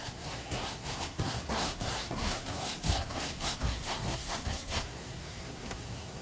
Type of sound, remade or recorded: remade